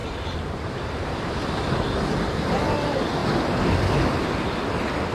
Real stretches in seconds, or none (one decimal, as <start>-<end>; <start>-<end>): 1.6-5.1